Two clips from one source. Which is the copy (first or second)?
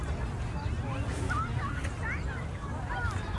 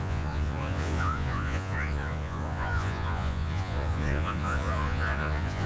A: second